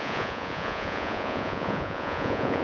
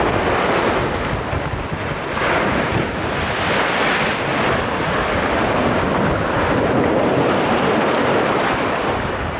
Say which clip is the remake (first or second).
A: first